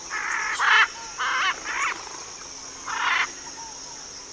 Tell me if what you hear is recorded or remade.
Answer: recorded